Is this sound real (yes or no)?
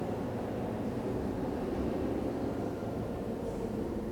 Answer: yes